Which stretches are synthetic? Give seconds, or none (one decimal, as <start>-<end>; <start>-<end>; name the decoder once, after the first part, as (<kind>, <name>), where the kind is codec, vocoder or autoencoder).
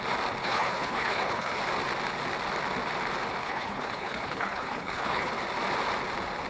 0.4-1.6 (codec, HILCodec); 3.4-5.3